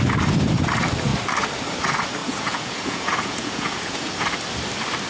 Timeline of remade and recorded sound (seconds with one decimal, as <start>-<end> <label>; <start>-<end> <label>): 0.0-2.2 recorded; 2.2-4.1 remade; 4.1-5.1 recorded